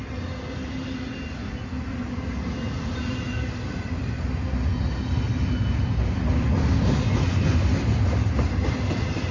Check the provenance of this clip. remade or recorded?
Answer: recorded